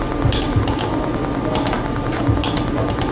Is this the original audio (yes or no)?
yes